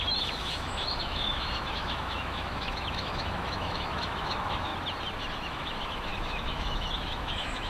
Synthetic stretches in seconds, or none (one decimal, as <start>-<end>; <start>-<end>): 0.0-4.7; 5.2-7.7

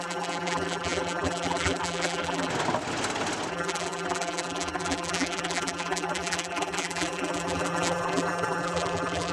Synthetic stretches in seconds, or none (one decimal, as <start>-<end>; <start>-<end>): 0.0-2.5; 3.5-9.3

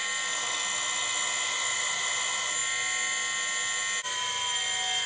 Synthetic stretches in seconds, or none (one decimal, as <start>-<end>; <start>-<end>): none